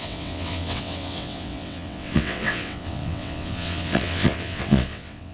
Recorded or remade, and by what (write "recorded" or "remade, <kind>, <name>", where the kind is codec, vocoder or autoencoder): remade, vocoder, WaveNeXt